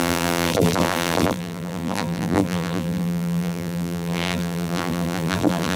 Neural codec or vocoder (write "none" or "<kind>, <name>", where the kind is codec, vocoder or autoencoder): vocoder, BigVGAN v2